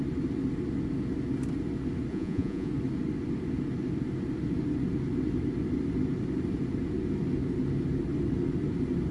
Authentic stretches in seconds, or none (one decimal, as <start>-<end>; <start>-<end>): 0.0-2.1; 2.7-9.1